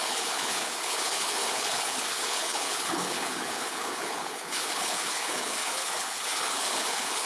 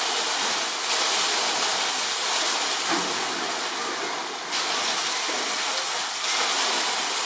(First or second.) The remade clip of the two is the first